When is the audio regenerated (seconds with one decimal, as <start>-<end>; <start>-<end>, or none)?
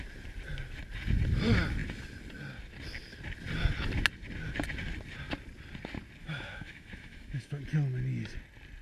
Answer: 6.2-7.6